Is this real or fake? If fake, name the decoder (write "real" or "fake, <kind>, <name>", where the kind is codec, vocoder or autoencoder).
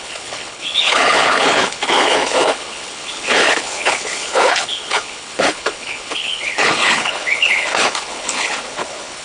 fake, codec, HILCodec